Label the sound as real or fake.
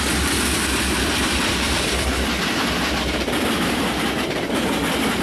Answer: fake